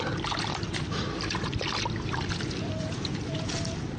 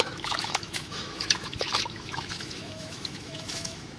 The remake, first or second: second